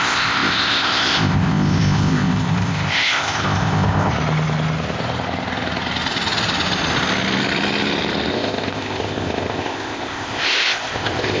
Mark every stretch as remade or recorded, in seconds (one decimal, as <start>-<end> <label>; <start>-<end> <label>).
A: 0.0-4.1 remade; 4.1-8.3 recorded; 8.3-11.4 remade